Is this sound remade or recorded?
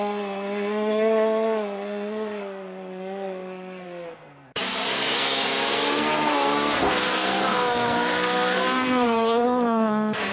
remade